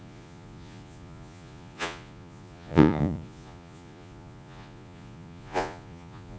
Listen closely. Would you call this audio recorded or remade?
remade